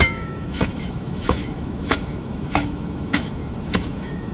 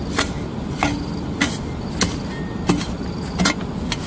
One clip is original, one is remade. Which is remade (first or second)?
first